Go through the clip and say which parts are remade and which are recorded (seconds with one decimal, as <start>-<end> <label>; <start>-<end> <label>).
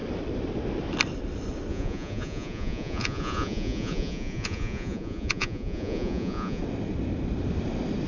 0.0-1.7 recorded; 1.7-6.6 remade; 6.6-8.1 recorded